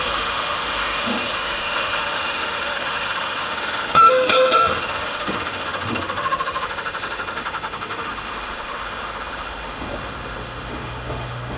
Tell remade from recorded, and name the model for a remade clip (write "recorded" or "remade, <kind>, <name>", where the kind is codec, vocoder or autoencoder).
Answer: remade, autoencoder, DAC-VAE